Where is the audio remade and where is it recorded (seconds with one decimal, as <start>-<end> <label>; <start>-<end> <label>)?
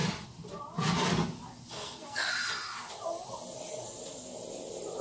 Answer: 0.0-1.7 recorded; 1.7-2.3 remade; 2.3-5.0 recorded